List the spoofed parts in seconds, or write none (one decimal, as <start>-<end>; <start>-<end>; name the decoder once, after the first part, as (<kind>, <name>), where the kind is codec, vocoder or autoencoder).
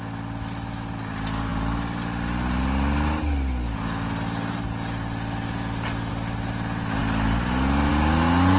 none